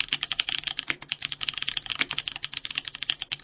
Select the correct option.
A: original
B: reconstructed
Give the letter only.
A